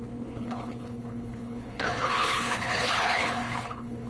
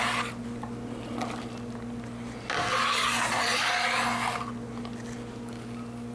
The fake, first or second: first